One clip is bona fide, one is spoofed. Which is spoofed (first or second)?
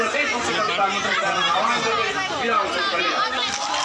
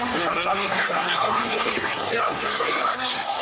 second